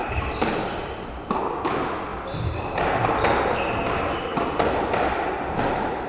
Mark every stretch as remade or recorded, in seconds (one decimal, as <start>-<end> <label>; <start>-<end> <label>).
0.0-6.1 recorded